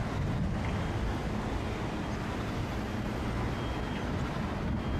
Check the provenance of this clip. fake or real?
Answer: real